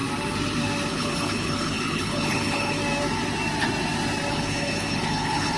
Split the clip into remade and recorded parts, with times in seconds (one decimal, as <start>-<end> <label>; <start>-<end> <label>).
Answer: 0.0-0.9 recorded; 0.9-2.8 remade; 2.8-4.3 recorded; 4.3-5.6 remade